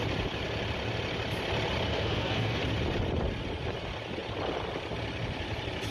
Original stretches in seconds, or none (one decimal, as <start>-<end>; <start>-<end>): 0.0-1.9; 2.6-5.9